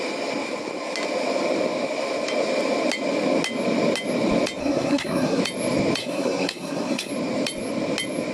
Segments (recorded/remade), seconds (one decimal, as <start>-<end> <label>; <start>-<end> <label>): 0.0-4.6 recorded; 4.6-5.4 remade; 5.4-6.0 recorded; 6.0-7.1 remade; 7.1-8.3 recorded